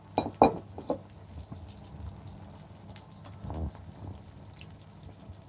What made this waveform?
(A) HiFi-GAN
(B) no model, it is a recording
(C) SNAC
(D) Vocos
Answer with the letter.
B